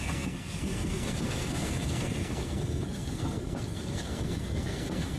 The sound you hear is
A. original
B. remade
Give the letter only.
B